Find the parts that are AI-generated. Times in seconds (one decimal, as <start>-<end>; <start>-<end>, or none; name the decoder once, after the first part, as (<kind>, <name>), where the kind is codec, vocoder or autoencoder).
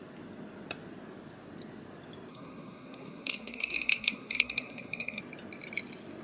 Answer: 2.3-5.2 (codec, SNAC)